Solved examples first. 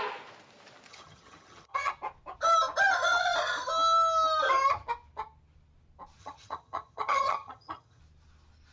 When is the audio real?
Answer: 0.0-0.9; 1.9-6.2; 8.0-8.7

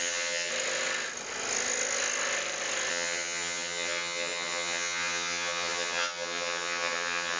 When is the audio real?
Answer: 0.5-2.9

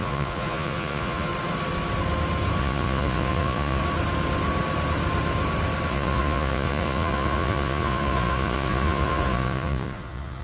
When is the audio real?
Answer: 1.3-2.6; 3.8-5.9